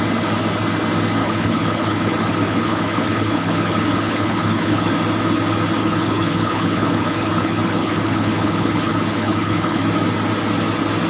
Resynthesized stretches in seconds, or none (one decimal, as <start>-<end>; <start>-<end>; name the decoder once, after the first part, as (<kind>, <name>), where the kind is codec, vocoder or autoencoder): 1.2-4.9 (codec, HILCodec); 5.8-9.8